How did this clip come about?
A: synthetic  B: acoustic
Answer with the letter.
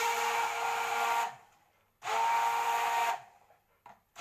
B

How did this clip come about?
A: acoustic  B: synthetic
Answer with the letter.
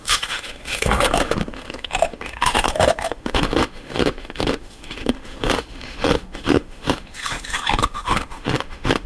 B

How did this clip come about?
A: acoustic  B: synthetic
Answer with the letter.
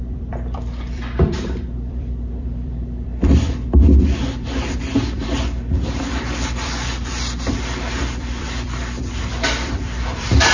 B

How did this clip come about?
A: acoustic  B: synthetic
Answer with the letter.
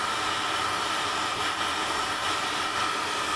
A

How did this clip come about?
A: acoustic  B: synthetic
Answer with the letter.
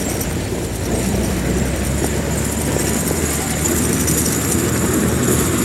B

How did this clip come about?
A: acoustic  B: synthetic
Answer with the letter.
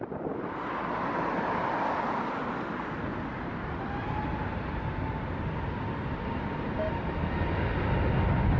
A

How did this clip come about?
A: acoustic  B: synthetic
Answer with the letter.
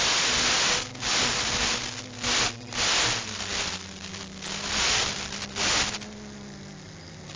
A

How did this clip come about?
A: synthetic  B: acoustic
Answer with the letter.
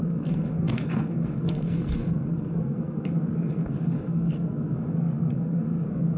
A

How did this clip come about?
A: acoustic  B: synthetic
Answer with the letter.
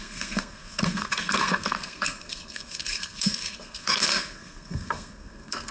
B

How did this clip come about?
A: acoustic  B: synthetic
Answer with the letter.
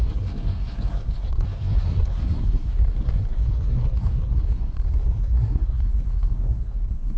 B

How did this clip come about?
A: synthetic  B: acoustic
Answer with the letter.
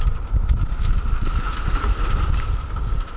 B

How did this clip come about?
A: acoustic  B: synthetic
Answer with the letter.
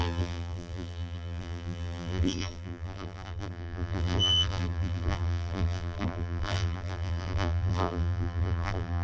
B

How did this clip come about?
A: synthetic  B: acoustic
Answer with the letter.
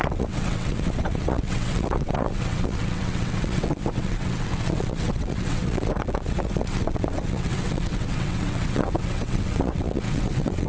A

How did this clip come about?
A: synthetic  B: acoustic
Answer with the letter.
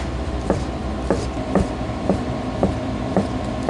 A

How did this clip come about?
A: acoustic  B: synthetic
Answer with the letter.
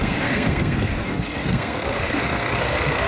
B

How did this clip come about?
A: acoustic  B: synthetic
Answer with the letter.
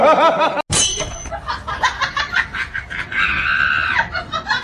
A